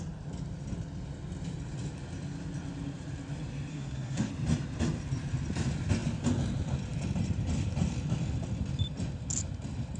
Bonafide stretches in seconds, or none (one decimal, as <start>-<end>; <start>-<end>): 0.0-3.7; 4.3-10.0

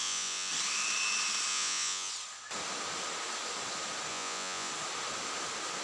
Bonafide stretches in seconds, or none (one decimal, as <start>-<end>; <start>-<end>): 0.5-1.5; 2.1-4.1; 4.7-5.8

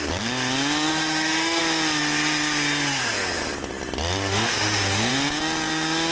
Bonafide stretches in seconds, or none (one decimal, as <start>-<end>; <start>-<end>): 0.0-0.9; 1.6-4.3; 5.1-6.1

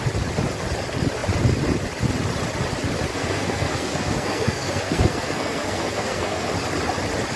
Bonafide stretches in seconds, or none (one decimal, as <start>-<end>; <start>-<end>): 0.0-3.1; 6.5-7.4

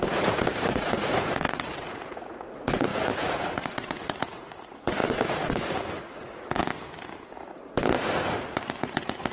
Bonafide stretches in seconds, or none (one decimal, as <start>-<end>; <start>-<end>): 6.6-7.3